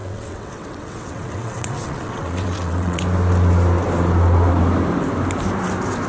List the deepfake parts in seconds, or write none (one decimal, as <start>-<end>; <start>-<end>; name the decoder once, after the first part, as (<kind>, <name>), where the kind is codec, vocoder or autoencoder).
0.0-3.0 (vocoder, WaveNeXt)